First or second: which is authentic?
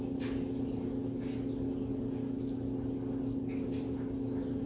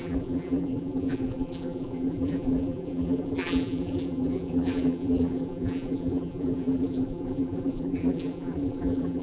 first